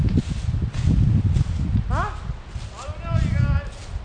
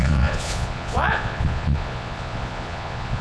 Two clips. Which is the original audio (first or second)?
first